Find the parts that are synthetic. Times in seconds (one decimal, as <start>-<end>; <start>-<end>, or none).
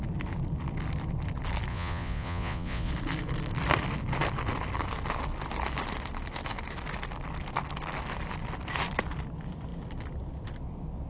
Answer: 1.7-2.9